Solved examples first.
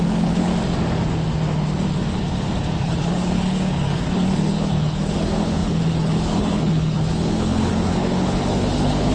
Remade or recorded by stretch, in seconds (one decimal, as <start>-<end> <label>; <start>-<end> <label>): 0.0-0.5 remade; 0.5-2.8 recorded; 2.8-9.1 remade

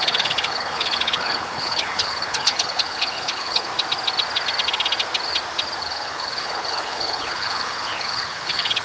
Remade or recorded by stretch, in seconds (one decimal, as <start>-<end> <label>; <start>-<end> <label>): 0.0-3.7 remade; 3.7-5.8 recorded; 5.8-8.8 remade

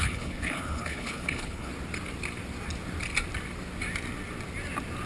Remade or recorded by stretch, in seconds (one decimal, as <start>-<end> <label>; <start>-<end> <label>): 0.0-1.7 remade; 1.7-5.1 recorded